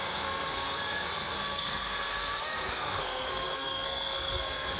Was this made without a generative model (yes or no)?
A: no